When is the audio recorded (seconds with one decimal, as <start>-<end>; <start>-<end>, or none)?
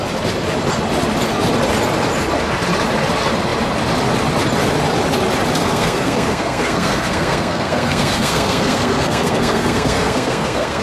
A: 0.0-5.6